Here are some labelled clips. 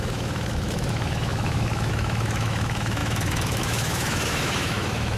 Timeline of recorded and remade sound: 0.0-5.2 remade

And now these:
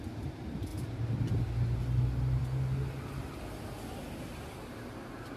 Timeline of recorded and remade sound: 0.0-5.4 recorded

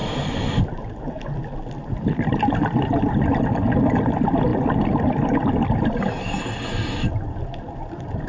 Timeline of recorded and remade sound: 0.0-8.3 recorded

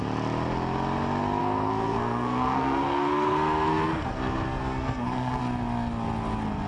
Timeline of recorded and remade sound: 0.0-1.4 recorded; 1.4-5.4 remade; 5.4-6.7 recorded

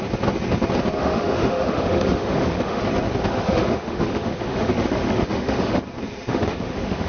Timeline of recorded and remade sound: 0.0-1.0 recorded; 1.0-2.8 remade; 2.8-3.2 recorded; 3.2-5.8 remade; 5.8-6.3 recorded; 6.3-7.1 remade

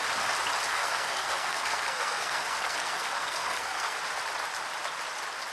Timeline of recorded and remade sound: 0.0-0.7 recorded; 0.7-4.0 remade; 4.0-5.5 recorded

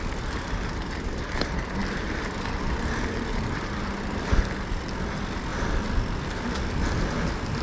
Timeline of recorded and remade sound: 0.0-7.6 recorded

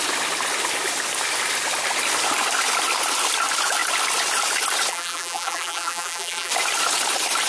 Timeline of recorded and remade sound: 0.0-4.9 recorded; 4.9-6.5 remade; 6.5-7.5 recorded